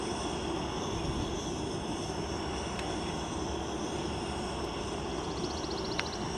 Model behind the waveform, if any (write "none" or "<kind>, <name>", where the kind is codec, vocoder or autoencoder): none